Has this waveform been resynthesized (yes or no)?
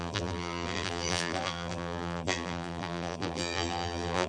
yes